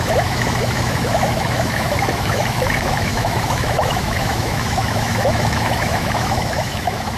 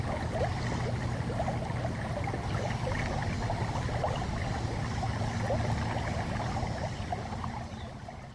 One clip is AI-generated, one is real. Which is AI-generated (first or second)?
first